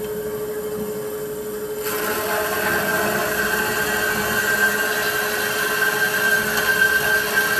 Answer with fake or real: real